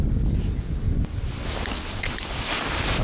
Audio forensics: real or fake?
real